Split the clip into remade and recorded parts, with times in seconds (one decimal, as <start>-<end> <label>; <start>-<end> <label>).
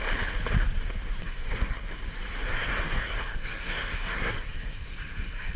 0.0-1.2 recorded; 1.2-2.0 remade; 2.0-2.5 recorded; 2.5-5.6 remade